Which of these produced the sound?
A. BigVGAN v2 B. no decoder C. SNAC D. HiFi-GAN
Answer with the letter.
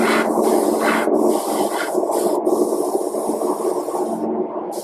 B